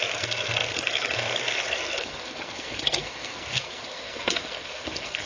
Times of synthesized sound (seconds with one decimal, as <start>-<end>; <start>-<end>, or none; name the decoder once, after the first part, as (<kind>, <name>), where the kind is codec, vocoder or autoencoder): 0.0-5.3 (codec, SNAC)